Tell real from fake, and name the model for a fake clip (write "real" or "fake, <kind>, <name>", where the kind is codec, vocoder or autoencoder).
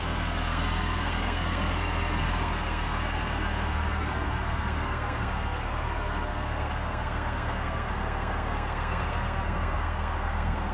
fake, codec, SNAC